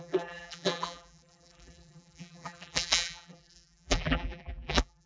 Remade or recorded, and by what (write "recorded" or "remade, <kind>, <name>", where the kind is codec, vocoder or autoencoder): remade, vocoder, BigVGAN v2